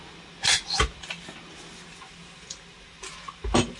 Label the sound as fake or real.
real